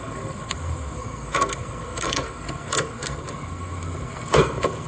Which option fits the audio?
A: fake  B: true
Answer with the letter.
A